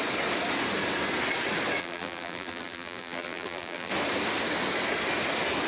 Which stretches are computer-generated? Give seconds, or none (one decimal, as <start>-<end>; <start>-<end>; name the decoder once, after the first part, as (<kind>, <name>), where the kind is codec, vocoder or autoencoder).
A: 1.8-3.9 (vocoder, BigVGAN v2)